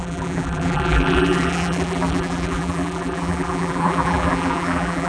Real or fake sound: fake